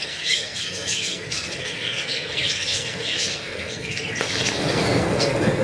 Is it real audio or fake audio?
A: fake